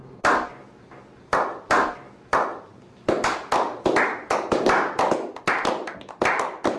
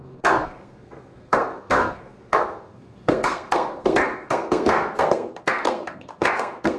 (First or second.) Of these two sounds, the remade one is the second